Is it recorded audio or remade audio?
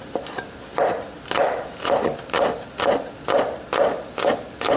recorded